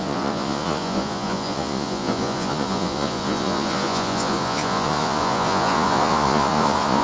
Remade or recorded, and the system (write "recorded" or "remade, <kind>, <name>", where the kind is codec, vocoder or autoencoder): remade, vocoder, Vocos